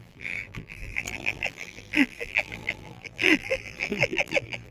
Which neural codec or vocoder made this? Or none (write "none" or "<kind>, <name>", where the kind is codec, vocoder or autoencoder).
vocoder, BigVGAN v2